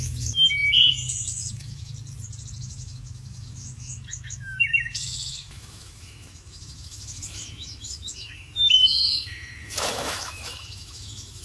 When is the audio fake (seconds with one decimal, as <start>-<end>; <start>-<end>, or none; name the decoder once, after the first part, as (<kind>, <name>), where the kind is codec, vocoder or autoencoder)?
0.0-1.9 (autoencoder, DAC-VAE); 2.6-11.4